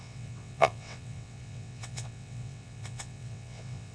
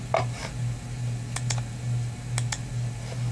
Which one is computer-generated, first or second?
first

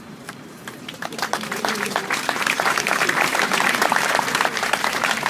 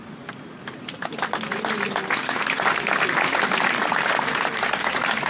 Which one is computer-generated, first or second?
first